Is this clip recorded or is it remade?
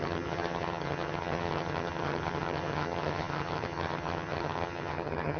remade